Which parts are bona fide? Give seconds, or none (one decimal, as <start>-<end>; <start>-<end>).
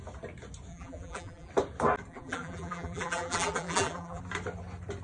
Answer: 0.0-0.7; 1.5-2.1; 4.2-5.0